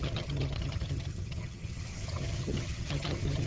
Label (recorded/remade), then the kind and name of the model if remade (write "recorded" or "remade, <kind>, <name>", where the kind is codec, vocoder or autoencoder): remade, vocoder, HiFi-GAN